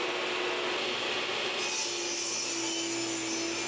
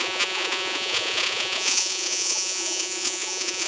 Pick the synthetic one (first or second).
second